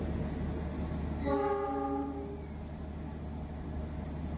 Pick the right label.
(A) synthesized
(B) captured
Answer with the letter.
B